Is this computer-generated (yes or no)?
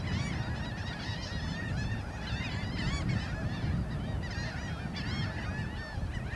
no